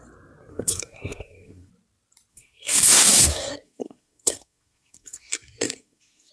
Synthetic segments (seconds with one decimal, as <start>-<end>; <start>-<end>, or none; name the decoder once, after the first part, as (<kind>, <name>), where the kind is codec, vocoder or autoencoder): 0.5-1.7 (codec, SNAC); 2.3-6.3